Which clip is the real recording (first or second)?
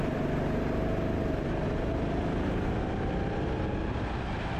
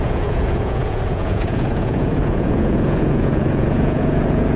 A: first